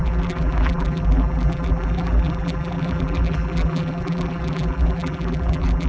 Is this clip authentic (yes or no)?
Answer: no